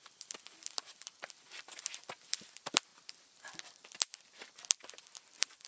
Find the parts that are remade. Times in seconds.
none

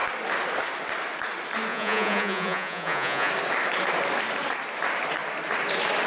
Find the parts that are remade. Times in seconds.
1.7-3.3

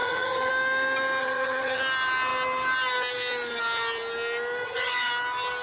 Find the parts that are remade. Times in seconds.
0.0-0.5; 1.2-1.8; 4.6-5.1

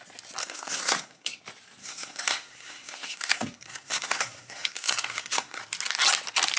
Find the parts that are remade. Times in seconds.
0.4-1.4; 1.8-5.6

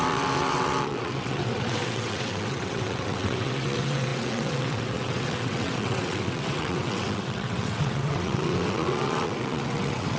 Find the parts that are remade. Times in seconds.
0.0-10.2

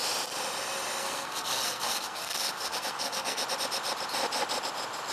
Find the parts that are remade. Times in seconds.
1.0-3.4